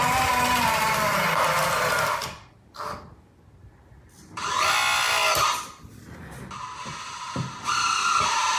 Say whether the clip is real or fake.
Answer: real